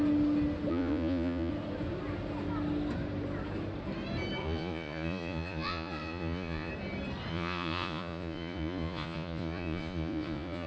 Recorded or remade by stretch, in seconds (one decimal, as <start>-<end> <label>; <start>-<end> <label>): 0.0-0.7 recorded; 0.7-1.5 remade; 1.5-4.4 recorded; 4.4-6.7 remade; 6.7-7.3 recorded; 7.3-10.7 remade